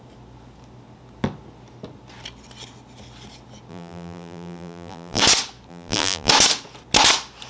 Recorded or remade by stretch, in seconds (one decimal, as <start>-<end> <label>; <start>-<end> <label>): 0.0-3.7 recorded; 3.7-5.2 remade; 5.2-5.7 recorded; 5.7-6.3 remade; 6.3-7.5 recorded